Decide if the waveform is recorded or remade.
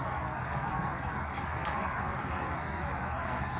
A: remade